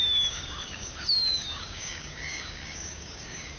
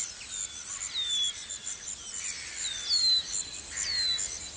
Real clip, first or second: second